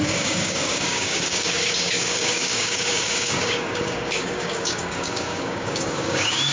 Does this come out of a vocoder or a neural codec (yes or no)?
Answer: yes